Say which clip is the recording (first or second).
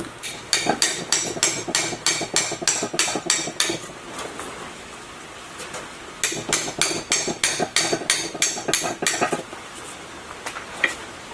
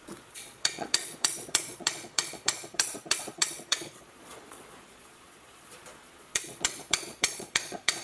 first